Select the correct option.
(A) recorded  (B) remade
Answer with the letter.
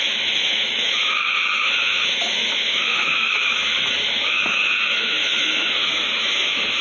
B